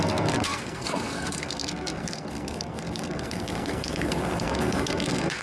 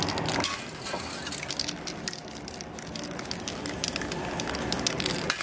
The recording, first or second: second